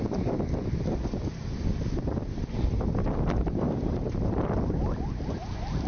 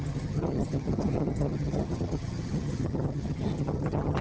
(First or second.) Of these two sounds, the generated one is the second